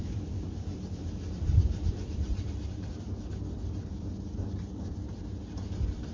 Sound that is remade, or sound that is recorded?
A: remade